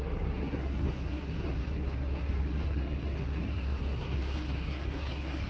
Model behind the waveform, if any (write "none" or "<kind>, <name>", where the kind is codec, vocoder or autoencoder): codec, SNAC